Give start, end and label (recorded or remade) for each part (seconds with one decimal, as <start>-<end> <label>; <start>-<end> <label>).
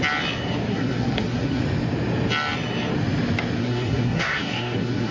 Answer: 0.0-0.7 recorded; 0.7-1.6 remade; 1.6-3.6 recorded; 3.6-5.1 remade